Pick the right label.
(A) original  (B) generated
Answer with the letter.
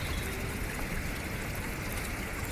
A